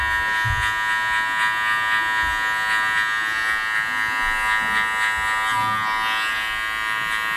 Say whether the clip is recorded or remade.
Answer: recorded